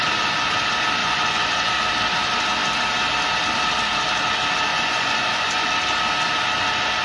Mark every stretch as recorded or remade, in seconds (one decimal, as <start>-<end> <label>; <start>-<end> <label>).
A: 0.0-1.0 recorded; 1.0-1.7 remade; 1.7-4.7 recorded; 4.7-5.7 remade; 5.7-7.0 recorded